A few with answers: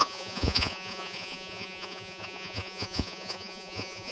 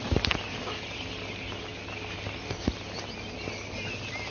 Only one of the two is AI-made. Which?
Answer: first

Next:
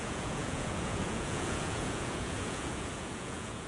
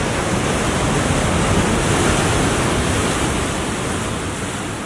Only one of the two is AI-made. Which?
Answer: first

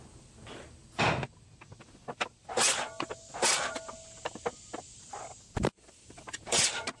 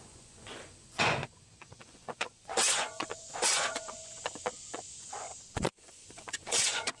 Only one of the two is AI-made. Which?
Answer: second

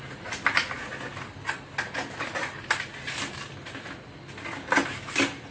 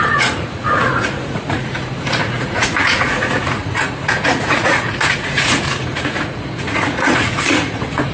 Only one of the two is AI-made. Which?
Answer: second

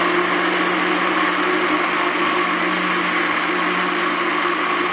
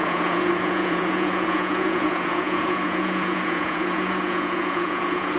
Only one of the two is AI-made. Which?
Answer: second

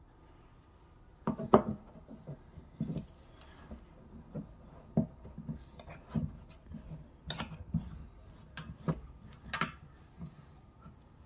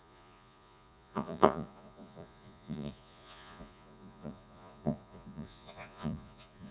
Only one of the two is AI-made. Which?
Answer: second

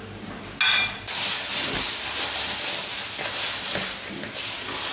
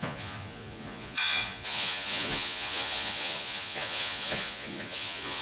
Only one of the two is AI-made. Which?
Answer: second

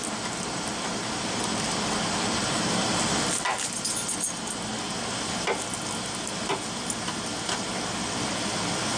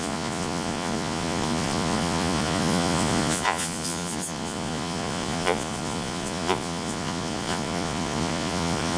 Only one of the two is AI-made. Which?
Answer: second